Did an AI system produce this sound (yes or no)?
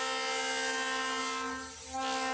no